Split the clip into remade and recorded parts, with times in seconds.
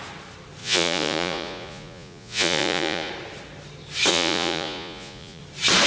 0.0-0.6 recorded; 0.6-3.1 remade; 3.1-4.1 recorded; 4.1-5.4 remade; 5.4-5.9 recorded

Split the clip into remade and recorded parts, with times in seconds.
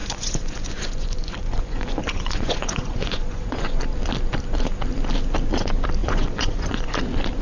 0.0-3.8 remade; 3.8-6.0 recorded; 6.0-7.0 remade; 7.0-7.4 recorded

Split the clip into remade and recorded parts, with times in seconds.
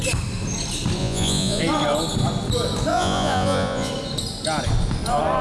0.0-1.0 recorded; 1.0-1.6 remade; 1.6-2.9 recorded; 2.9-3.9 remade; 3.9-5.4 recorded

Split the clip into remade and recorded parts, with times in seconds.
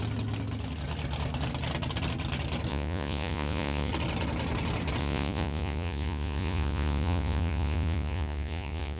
0.0-2.7 recorded; 2.7-3.9 remade; 3.9-5.0 recorded; 5.0-9.0 remade